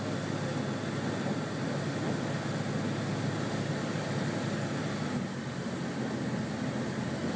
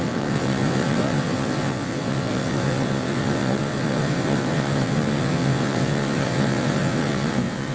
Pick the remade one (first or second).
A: second